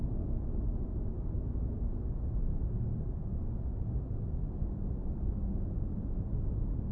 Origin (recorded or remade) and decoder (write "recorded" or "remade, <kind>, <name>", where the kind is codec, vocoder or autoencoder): recorded